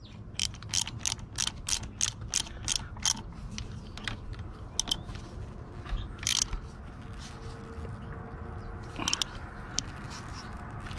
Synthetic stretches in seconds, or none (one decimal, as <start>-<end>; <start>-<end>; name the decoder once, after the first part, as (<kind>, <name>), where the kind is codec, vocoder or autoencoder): none